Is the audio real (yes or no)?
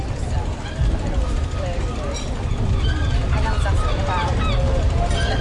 yes